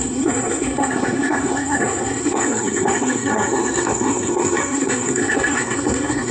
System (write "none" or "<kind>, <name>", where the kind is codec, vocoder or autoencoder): codec, SNAC